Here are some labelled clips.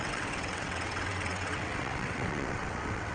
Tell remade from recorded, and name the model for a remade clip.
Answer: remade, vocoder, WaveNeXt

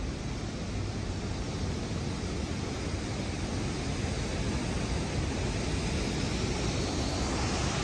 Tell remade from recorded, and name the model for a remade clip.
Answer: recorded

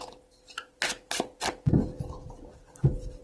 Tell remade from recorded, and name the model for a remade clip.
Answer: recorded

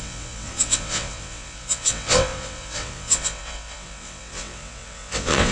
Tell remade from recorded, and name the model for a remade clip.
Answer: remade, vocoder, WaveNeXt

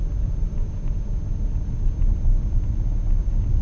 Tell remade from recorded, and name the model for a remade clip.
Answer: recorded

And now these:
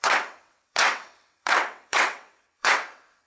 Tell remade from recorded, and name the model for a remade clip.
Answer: remade, vocoder, WaveNeXt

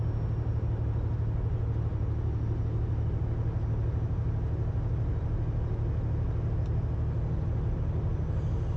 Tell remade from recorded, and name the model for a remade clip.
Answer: recorded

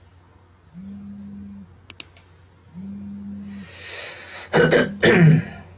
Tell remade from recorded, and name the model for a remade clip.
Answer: recorded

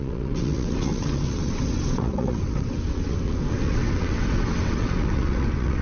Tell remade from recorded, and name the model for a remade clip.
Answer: remade, vocoder, WaveNeXt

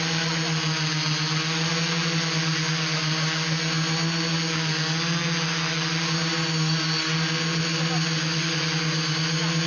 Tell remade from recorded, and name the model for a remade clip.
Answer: recorded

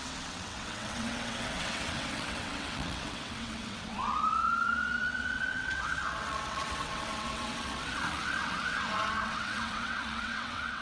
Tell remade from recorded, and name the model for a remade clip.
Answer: remade, vocoder, WaveNeXt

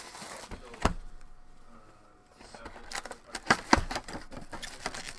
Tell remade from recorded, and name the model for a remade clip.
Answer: recorded